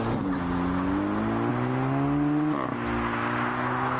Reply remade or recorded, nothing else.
recorded